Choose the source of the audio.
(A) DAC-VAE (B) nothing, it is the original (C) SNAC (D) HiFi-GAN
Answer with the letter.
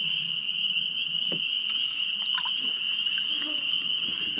B